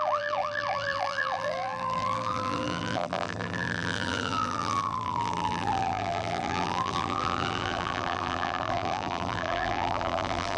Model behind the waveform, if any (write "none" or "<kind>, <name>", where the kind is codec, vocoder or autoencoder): vocoder, BigVGAN v2